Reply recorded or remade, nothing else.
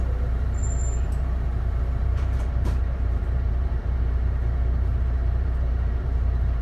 remade